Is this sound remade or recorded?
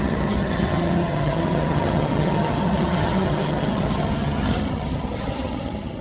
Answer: remade